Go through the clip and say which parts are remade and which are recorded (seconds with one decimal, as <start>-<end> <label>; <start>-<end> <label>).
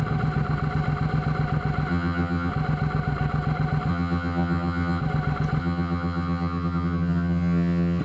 0.0-1.9 recorded; 1.9-2.5 remade; 2.5-3.9 recorded; 3.9-5.0 remade; 5.0-5.6 recorded; 5.6-8.0 remade